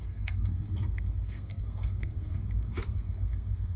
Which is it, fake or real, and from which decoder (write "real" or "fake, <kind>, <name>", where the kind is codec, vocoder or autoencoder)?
fake, codec, SNAC